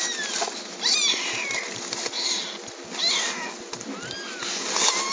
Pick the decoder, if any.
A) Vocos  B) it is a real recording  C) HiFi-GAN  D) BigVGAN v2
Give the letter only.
B